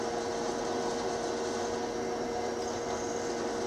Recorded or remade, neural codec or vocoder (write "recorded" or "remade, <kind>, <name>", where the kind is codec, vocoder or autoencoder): recorded